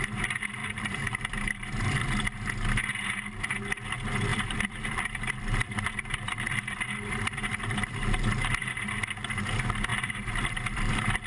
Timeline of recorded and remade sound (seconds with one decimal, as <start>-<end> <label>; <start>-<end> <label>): 0.0-0.6 recorded; 0.6-2.1 remade; 2.1-4.3 recorded; 4.3-7.5 remade; 7.5-9.9 recorded; 9.9-10.9 remade; 10.9-11.3 recorded